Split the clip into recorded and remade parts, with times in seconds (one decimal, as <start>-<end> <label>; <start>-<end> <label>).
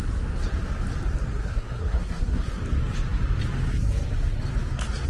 0.0-1.3 recorded; 1.3-2.6 remade; 2.6-5.1 recorded